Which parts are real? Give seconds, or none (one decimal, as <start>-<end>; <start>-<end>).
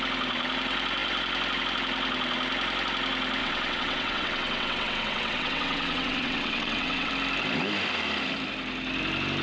0.0-3.4; 7.1-9.4